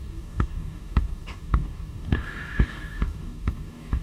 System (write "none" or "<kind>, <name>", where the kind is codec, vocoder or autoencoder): codec, DAC